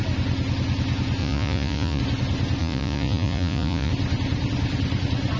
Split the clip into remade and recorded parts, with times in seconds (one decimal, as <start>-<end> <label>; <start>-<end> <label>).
0.0-1.2 recorded; 1.2-2.0 remade; 2.0-2.6 recorded; 2.6-3.9 remade; 3.9-5.4 recorded